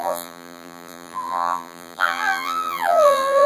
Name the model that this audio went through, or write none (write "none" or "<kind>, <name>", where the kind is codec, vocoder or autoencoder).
vocoder, BigVGAN v2